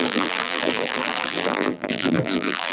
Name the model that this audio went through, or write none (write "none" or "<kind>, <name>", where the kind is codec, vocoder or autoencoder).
vocoder, BigVGAN v2